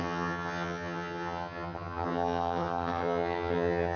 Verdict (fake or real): fake